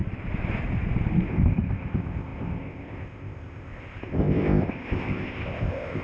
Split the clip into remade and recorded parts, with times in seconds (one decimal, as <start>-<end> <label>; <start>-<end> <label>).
0.0-1.3 recorded; 1.3-6.0 remade